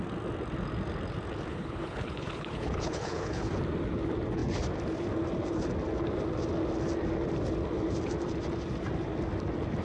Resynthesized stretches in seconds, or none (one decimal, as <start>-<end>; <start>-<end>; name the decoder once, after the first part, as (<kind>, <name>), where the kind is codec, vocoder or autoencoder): 1.5-3.5 (codec, HILCodec)